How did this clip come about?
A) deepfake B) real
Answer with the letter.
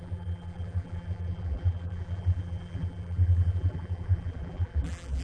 A